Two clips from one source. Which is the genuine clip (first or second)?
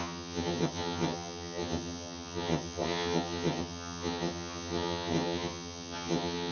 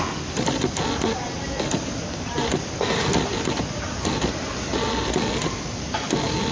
second